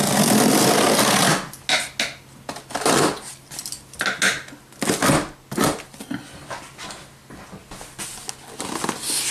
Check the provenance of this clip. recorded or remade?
recorded